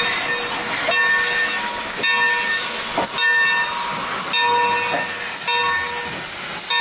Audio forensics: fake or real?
real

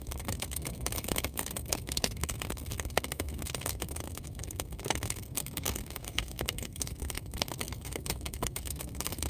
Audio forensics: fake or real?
fake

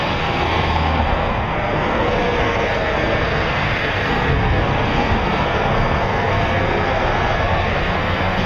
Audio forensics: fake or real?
fake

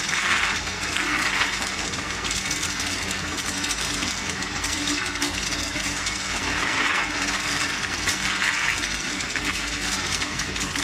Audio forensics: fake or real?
fake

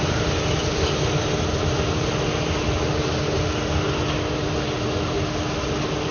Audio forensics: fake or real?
real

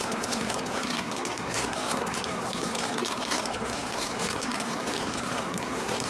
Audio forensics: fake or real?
fake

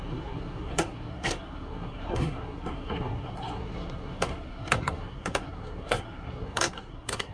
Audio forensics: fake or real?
fake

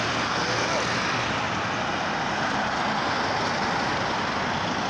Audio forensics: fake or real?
real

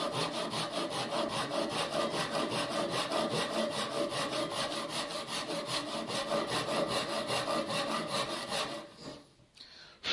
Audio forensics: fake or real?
real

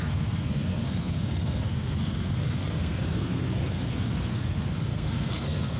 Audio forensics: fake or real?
fake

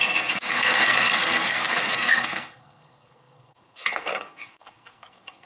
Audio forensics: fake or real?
fake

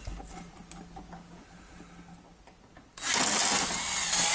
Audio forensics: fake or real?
real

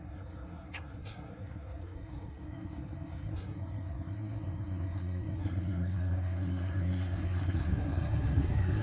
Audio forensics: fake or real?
fake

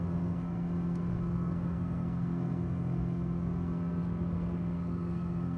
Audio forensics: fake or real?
fake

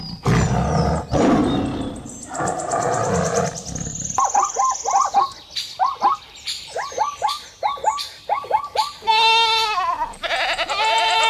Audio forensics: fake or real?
real